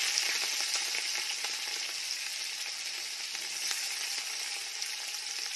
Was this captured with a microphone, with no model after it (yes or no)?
yes